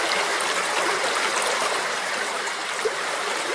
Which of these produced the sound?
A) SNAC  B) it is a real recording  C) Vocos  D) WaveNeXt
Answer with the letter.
B